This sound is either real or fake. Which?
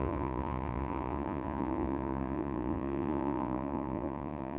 fake